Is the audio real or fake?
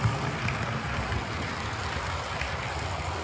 real